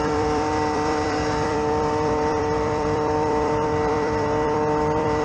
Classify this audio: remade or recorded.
remade